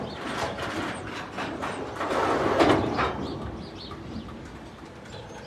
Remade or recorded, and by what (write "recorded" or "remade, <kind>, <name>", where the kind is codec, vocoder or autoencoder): recorded